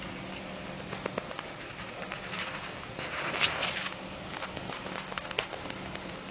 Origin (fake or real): real